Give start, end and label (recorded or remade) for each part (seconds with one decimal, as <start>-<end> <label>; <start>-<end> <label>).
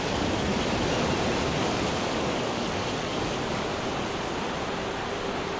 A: 0.0-0.5 remade; 0.5-1.5 recorded; 1.5-3.7 remade; 3.7-5.6 recorded